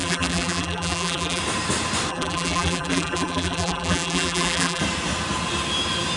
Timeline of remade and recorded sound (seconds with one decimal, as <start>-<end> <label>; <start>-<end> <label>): 0.0-1.4 remade; 1.4-2.1 recorded; 2.1-4.8 remade; 4.8-6.2 recorded